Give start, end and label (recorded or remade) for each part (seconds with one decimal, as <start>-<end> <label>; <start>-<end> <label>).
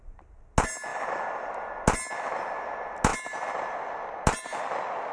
0.0-5.1 recorded